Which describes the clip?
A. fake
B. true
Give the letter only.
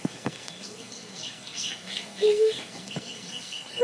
A